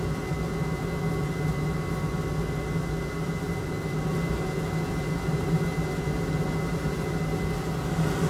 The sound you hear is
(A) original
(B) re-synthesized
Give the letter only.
A